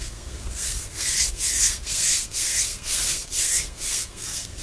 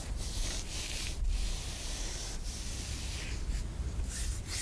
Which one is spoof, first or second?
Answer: first